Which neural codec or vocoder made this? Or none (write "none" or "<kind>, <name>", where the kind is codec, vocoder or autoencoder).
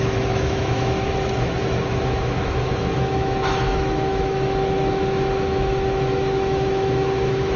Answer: autoencoder, DAC-VAE